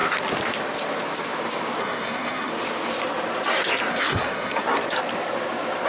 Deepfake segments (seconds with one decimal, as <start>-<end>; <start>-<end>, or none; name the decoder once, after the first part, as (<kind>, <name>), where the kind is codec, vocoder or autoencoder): 1.8-2.5 (codec, SNAC); 3.9-4.6